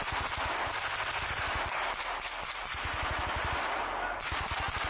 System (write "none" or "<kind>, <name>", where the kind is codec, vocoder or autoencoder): none